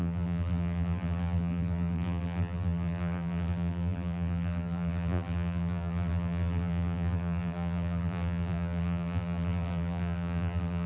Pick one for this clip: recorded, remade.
remade